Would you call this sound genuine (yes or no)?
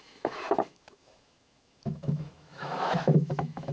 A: no